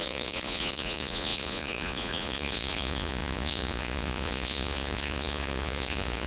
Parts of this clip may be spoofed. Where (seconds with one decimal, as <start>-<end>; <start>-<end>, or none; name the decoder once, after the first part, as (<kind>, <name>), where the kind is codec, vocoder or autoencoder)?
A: 0.0-6.3 (vocoder, Vocos)